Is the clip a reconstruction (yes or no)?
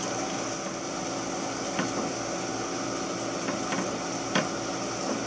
no